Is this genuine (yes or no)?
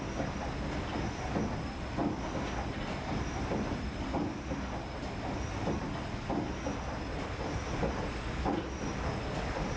yes